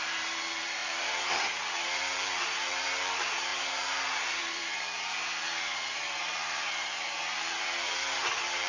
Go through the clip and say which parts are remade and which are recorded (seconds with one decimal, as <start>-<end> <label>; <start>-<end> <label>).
0.0-8.7 remade